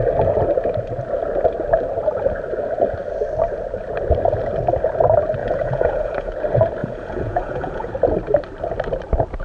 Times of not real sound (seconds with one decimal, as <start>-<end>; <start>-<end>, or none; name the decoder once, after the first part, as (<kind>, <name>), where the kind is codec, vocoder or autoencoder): 5.4-6.3 (vocoder, Vocos); 6.8-7.9